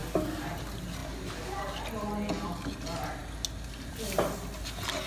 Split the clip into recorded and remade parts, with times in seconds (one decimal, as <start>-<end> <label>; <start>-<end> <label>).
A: 0.0-5.1 recorded

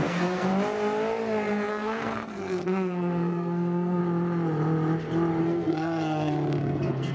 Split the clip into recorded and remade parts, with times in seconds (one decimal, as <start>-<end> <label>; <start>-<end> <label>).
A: 0.0-0.5 remade; 0.5-1.7 recorded; 1.7-4.0 remade; 4.0-5.4 recorded; 5.4-7.1 remade